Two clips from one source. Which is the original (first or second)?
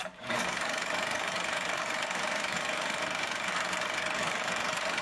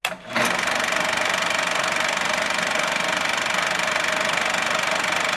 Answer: second